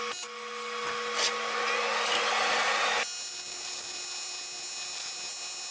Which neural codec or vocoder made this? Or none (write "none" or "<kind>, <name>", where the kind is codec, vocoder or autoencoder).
none